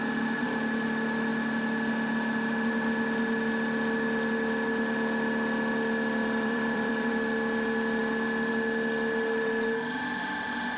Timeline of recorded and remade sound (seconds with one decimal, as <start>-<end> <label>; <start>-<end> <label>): 0.0-6.2 recorded; 6.2-7.1 remade; 7.1-10.8 recorded